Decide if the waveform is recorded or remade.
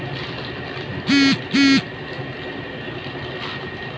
recorded